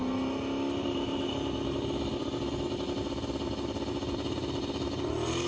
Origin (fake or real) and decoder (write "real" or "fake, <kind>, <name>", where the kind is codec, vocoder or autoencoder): real